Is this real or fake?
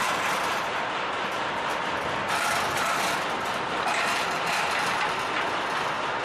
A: fake